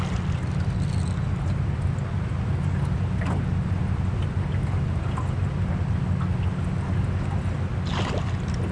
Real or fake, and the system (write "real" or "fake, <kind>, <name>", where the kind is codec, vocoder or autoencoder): real